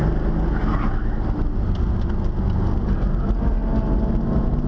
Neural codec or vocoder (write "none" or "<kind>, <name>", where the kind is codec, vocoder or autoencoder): none